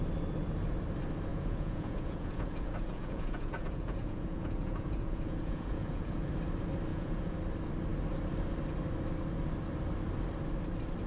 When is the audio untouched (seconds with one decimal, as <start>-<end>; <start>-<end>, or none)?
0.0-1.3; 6.3-6.9; 7.4-11.1